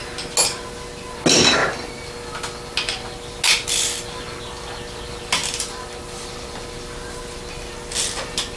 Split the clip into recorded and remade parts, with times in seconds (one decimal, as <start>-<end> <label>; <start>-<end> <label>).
0.0-8.6 recorded